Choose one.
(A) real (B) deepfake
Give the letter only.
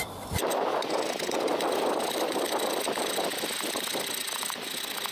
B